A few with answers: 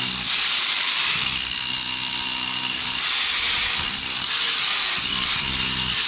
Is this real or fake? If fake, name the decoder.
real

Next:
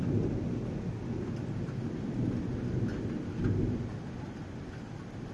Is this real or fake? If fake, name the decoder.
real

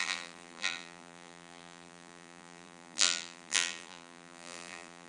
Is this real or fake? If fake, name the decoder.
fake, vocoder, BigVGAN v2